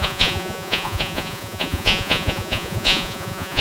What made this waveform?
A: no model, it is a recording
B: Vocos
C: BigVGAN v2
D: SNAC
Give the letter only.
B